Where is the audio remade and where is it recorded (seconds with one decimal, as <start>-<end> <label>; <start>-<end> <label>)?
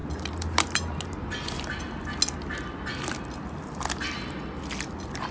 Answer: 0.0-5.3 recorded